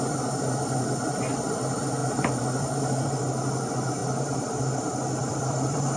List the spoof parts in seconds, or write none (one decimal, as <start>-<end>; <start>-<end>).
2.0-3.2; 4.0-4.6; 5.2-6.0